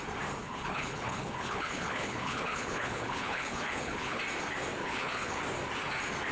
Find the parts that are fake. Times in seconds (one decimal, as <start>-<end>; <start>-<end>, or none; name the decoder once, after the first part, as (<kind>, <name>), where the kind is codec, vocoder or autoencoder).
0.4-4.2 (codec, HILCodec); 4.8-5.4